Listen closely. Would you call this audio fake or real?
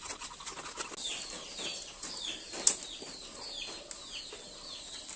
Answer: real